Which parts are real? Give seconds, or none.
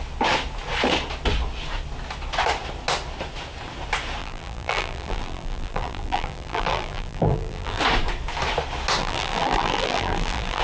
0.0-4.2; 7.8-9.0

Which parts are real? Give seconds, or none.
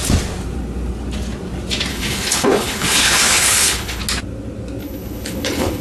0.0-1.9; 4.0-4.8